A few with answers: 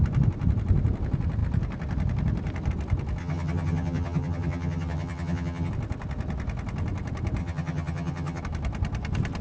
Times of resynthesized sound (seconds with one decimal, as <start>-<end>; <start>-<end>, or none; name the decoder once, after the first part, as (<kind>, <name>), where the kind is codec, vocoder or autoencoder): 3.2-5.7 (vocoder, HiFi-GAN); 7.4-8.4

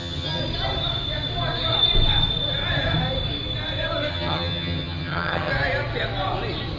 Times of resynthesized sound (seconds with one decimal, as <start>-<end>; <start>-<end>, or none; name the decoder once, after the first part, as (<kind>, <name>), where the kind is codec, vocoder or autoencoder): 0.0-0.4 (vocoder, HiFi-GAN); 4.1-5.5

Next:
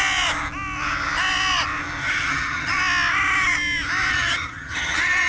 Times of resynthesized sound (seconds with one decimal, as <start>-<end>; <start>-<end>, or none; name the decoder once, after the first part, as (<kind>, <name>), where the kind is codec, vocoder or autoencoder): 2.0-2.8 (vocoder, HiFi-GAN); 4.1-5.3

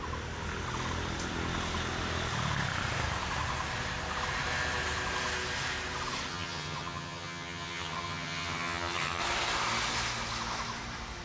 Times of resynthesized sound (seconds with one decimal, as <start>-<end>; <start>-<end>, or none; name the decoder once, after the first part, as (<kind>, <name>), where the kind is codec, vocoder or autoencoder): 6.3-9.2 (vocoder, HiFi-GAN)

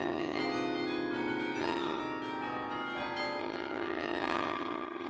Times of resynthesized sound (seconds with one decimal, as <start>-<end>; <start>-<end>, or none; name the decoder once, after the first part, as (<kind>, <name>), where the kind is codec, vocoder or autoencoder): 0.0-0.4 (vocoder, HiFi-GAN); 1.6-2.0; 3.4-5.1

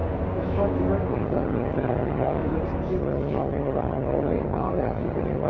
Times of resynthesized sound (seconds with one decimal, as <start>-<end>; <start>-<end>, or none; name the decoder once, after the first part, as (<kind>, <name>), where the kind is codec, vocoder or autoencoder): 1.1-2.4 (vocoder, HiFi-GAN); 3.0-5.5

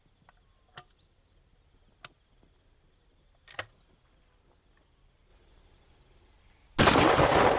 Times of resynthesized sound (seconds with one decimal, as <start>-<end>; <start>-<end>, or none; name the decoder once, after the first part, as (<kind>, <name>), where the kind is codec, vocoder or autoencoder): none

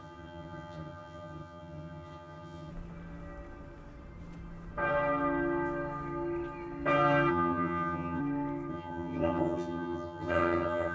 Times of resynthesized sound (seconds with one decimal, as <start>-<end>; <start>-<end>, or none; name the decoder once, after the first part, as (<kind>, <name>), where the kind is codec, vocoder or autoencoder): 0.0-2.7 (vocoder, HiFi-GAN); 7.3-8.2; 8.7-10.9